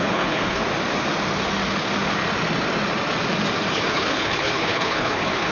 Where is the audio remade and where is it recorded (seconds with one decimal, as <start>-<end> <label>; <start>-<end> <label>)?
0.0-0.6 remade; 0.6-3.9 recorded; 3.9-5.5 remade